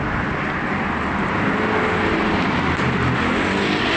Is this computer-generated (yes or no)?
no